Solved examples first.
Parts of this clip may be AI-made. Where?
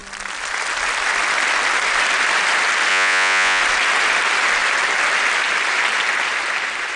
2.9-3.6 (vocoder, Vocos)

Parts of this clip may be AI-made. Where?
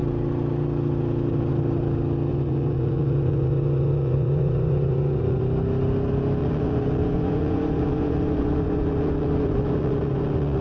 2.3-5.4 (vocoder, Vocos); 6.4-10.6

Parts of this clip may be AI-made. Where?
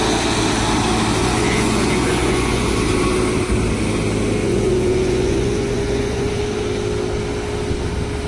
1.2-2.7 (vocoder, Vocos); 4.4-6.4